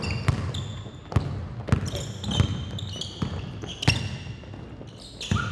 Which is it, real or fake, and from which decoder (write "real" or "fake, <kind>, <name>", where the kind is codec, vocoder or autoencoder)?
real